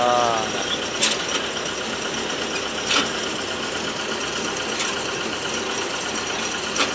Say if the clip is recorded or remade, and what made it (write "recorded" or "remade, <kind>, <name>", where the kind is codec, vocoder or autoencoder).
recorded